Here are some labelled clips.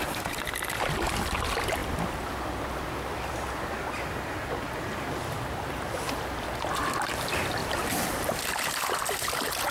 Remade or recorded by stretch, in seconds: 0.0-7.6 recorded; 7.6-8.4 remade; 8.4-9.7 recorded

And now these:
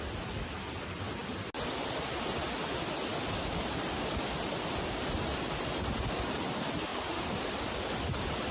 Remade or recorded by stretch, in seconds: 0.0-6.9 recorded; 6.9-8.5 remade

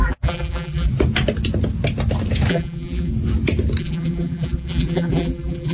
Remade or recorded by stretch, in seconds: 0.0-0.9 remade; 0.9-2.5 recorded; 2.5-3.1 remade; 3.1-3.8 recorded; 3.8-5.7 remade